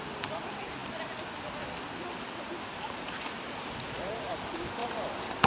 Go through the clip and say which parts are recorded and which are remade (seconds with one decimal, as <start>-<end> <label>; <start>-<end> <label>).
0.0-0.8 remade; 0.8-2.3 recorded; 2.3-5.5 remade